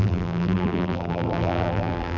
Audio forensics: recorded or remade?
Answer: remade